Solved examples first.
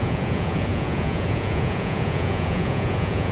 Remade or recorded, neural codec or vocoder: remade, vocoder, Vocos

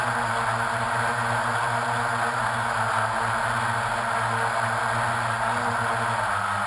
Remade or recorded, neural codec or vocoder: recorded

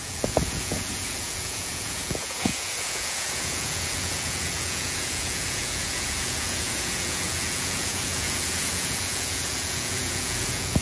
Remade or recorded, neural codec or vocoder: remade, vocoder, Vocos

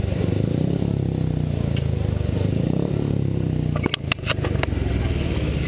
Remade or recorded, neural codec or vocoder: recorded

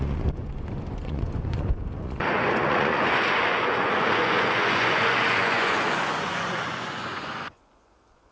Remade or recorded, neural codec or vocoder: remade, vocoder, Vocos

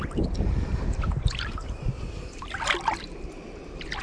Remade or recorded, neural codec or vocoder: recorded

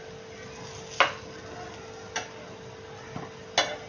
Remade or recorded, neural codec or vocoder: recorded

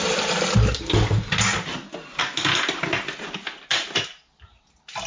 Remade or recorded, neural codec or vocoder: recorded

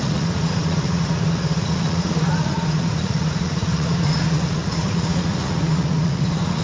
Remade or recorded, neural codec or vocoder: remade, vocoder, Vocos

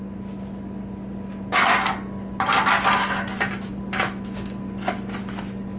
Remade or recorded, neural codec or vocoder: recorded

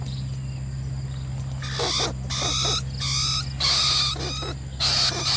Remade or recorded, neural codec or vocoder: recorded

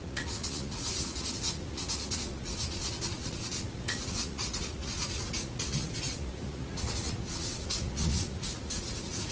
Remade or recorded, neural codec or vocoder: remade, vocoder, Vocos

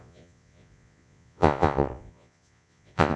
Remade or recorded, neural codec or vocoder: remade, vocoder, Vocos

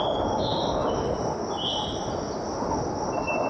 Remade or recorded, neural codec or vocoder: recorded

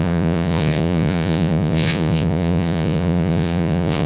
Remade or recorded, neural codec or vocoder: remade, vocoder, Vocos